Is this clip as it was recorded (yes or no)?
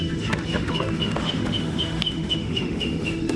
no